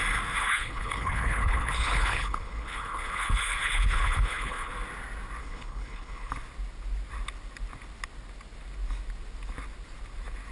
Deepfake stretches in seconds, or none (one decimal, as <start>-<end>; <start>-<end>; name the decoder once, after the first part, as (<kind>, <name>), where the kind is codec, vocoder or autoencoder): 0.4-4.7 (codec, HILCodec); 5.4-6.3